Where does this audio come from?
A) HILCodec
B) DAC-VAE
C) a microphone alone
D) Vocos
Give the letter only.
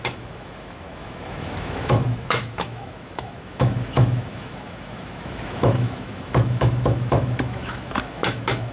B